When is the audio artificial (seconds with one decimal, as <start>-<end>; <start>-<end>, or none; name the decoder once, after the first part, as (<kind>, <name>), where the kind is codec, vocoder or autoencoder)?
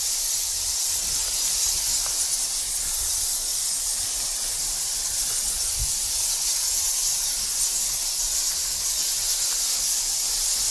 3.5-5.9 (vocoder, BigVGAN v2)